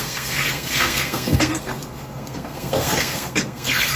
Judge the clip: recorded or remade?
remade